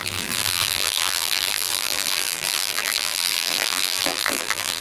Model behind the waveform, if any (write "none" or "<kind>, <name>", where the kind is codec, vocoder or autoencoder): vocoder, BigVGAN v2